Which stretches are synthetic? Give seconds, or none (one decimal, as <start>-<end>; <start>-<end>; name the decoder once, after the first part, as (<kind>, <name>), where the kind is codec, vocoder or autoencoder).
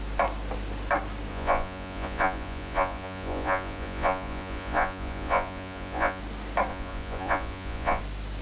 1.3-6.2 (vocoder, Vocos); 6.7-8.0